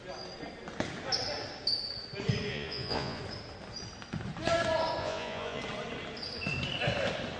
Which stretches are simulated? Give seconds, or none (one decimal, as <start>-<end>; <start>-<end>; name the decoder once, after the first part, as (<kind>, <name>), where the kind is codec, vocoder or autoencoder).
2.5-3.2 (vocoder, Vocos); 5.0-5.6